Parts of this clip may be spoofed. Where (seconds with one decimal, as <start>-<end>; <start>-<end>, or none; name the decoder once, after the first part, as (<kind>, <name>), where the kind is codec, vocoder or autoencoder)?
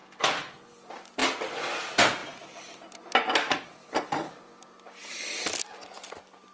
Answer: none